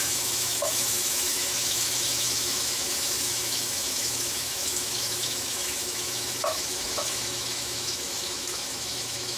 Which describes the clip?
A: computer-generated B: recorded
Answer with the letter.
A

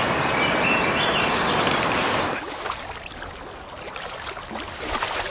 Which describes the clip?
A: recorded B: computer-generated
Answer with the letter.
A